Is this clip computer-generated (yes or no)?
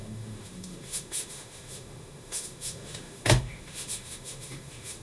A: yes